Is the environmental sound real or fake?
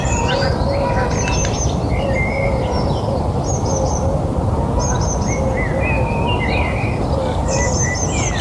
real